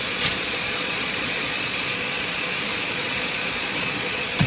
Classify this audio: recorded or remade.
remade